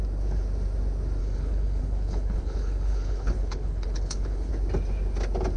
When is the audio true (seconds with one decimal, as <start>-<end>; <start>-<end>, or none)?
0.0-1.2; 4.5-5.6